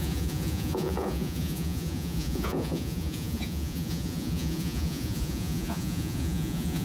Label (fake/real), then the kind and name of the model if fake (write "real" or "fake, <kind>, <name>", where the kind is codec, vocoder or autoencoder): fake, vocoder, Vocos